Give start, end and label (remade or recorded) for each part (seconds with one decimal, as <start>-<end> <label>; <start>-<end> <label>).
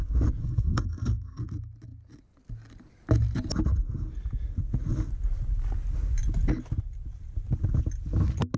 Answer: 0.0-0.4 recorded; 0.4-1.4 remade; 1.4-8.6 recorded